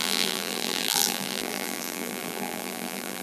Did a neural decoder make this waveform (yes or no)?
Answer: yes